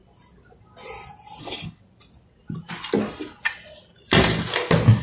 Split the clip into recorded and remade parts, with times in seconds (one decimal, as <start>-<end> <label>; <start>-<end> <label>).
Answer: 0.0-1.4 recorded; 1.4-1.8 remade; 1.8-5.0 recorded